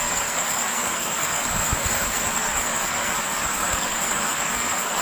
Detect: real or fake fake